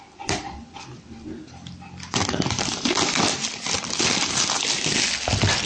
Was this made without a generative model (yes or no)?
no